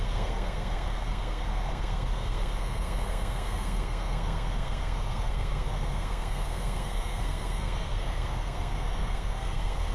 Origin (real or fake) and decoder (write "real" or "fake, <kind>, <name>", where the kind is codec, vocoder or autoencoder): fake, codec, SNAC